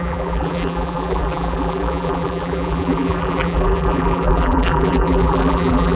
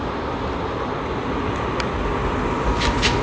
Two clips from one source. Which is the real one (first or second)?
second